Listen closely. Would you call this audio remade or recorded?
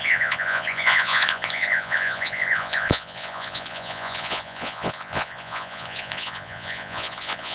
remade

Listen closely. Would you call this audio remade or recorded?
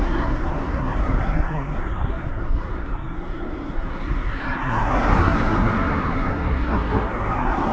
remade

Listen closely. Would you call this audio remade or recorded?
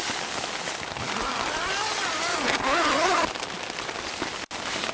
recorded